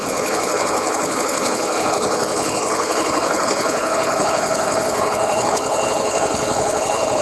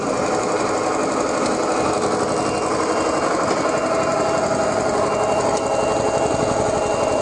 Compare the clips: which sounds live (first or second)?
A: second